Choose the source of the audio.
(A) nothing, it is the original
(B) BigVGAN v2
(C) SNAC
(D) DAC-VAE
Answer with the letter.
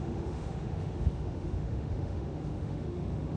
D